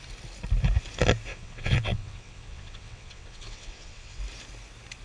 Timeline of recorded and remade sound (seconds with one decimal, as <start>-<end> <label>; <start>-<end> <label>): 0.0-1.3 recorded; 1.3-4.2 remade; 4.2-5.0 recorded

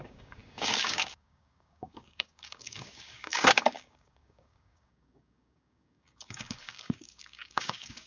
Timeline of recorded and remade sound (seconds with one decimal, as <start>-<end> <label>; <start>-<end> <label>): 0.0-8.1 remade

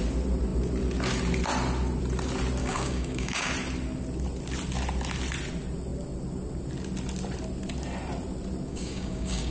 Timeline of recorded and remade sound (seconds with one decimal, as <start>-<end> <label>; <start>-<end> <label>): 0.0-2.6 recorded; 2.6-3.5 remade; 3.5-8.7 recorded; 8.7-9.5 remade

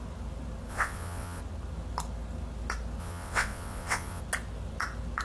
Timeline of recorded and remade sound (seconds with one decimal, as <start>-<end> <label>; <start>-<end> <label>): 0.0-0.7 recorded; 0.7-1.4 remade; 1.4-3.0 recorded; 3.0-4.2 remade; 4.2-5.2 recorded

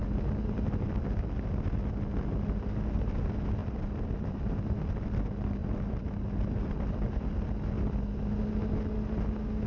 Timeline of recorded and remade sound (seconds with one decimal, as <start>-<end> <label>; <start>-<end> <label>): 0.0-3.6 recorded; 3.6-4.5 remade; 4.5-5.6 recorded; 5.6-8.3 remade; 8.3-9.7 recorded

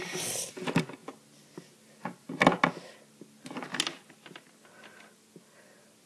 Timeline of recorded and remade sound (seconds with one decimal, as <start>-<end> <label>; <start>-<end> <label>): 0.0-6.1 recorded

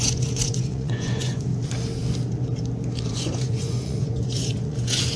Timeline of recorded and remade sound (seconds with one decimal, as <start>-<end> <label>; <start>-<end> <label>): 0.0-1.5 remade; 1.5-3.1 recorded; 3.1-5.2 remade

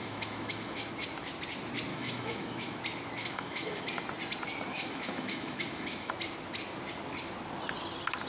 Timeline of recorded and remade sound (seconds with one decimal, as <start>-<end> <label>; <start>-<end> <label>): 0.0-0.9 remade; 0.9-1.9 recorded; 1.9-2.8 remade; 2.8-3.2 recorded; 3.2-3.8 remade; 3.8-4.7 recorded; 4.7-6.1 remade; 6.1-8.3 recorded